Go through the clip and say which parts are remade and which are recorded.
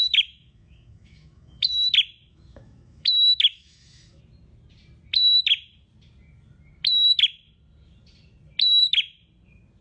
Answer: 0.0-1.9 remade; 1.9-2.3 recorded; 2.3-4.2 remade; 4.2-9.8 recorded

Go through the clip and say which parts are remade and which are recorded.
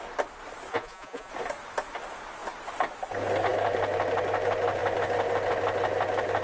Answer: 0.0-0.7 recorded; 0.7-1.3 remade; 1.3-6.4 recorded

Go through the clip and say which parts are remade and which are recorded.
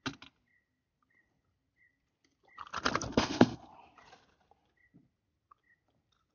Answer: 0.0-3.1 recorded; 3.1-3.7 remade; 3.7-6.3 recorded